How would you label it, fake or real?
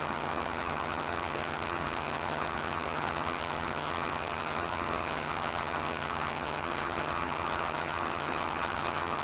fake